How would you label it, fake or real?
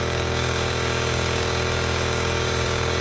fake